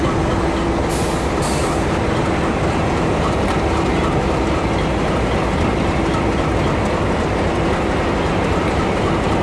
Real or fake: real